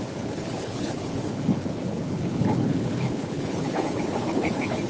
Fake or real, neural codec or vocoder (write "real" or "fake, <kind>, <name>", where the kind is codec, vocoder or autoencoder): fake, codec, HILCodec